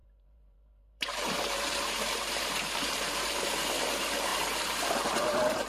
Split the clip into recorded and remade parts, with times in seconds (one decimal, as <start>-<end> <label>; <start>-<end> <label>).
0.0-3.4 remade; 3.4-4.3 recorded; 4.3-5.7 remade